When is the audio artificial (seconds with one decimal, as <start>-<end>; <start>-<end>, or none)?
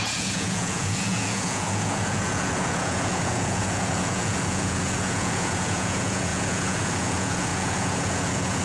0.0-8.6